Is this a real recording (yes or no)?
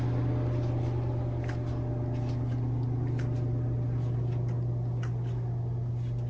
yes